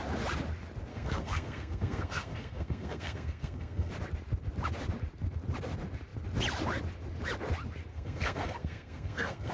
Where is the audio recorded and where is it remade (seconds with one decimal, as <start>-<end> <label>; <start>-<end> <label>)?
0.0-0.9 recorded; 0.9-3.9 remade; 3.9-7.9 recorded; 7.9-9.5 remade